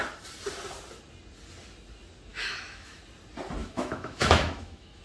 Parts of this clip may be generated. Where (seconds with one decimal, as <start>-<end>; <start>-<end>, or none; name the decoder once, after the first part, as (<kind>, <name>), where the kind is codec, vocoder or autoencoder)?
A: 2.3-3.0 (autoencoder, DAC-VAE); 3.6-5.0